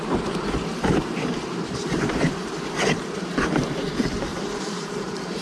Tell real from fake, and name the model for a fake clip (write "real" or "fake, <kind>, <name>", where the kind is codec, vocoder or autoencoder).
fake, vocoder, BigVGAN v2